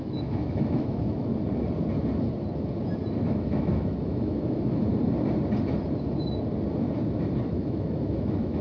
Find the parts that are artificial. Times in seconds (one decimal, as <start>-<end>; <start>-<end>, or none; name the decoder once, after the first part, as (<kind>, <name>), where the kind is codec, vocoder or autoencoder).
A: 0.0-1.3 (autoencoder, DAC-VAE); 3.2-4.9; 7.5-8.6